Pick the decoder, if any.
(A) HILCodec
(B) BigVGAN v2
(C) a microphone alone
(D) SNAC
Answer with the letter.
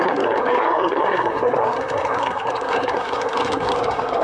D